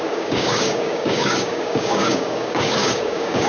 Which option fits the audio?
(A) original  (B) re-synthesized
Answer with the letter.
B